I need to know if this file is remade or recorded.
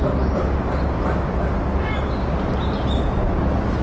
recorded